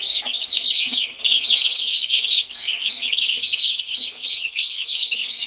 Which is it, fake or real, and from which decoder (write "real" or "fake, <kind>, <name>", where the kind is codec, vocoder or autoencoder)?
fake, codec, SNAC